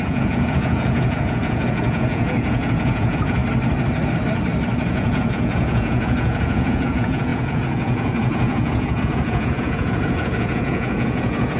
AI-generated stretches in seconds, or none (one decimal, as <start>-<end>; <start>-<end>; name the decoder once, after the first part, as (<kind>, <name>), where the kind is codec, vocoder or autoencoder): 0.0-3.4 (vocoder, Vocos); 4.9-11.6